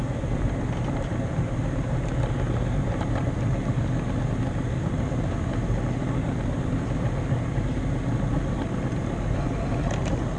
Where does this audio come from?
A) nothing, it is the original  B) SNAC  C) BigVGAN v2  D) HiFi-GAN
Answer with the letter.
A